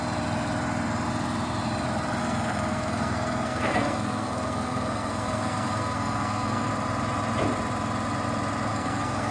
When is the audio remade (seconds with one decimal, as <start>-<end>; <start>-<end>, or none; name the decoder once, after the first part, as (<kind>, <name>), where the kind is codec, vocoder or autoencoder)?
2.2-6.7 (codec, SNAC); 8.7-9.3